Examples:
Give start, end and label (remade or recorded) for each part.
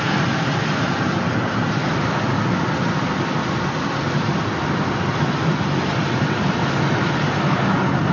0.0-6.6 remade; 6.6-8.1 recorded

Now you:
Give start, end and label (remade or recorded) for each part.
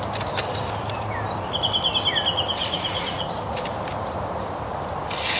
0.0-2.6 recorded; 2.6-3.5 remade; 3.5-5.4 recorded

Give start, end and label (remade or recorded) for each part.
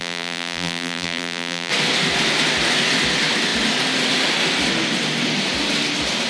0.0-1.7 remade; 1.7-6.3 recorded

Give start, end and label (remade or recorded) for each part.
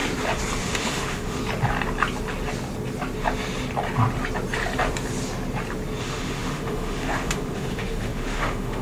0.0-0.6 recorded; 0.6-1.4 remade; 1.4-6.0 recorded; 6.0-8.8 remade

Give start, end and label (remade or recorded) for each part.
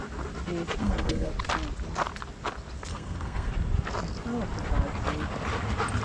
0.0-0.8 recorded; 0.8-1.3 remade; 1.3-2.9 recorded; 2.9-3.5 remade; 3.5-6.0 recorded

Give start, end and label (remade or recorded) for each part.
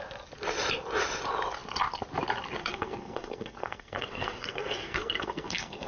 0.0-2.6 recorded; 2.6-5.9 remade